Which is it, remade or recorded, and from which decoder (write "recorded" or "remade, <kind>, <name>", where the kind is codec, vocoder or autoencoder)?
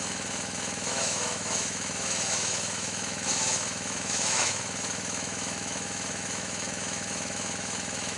remade, autoencoder, DAC-VAE